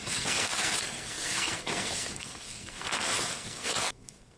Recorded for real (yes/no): no